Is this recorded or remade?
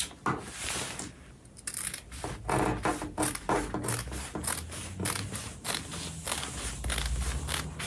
recorded